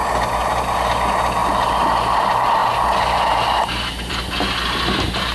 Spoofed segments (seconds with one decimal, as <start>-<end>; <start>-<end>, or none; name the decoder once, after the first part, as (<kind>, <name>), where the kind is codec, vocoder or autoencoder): none